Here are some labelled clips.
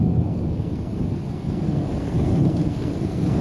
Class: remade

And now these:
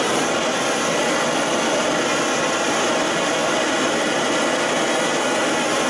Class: recorded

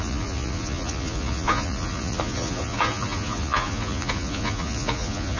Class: remade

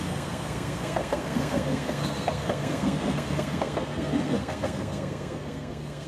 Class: remade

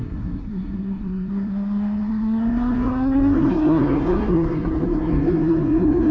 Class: remade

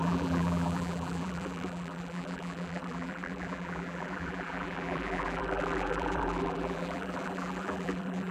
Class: remade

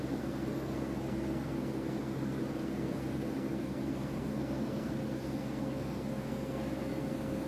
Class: remade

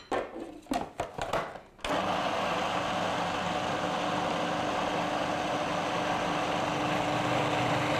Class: recorded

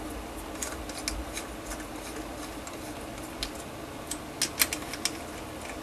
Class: recorded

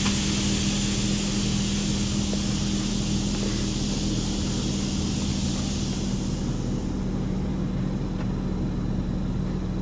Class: recorded